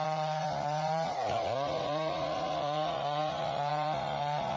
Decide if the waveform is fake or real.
fake